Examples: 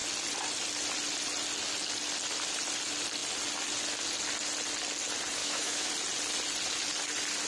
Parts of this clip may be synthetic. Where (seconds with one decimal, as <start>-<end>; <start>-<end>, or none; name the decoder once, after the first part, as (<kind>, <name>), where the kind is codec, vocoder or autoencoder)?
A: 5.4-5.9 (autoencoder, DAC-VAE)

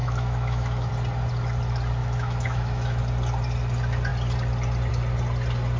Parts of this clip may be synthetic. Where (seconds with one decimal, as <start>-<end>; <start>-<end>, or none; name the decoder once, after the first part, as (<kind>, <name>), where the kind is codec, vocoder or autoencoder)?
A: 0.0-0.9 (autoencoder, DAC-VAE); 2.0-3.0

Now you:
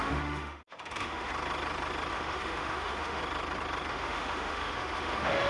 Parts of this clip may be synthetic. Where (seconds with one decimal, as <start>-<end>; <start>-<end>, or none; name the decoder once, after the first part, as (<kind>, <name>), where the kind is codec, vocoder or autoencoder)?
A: 0.0-1.3 (autoencoder, DAC-VAE); 2.1-3.2; 3.9-5.5